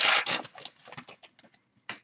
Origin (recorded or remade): recorded